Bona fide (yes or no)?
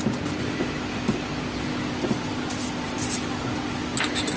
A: yes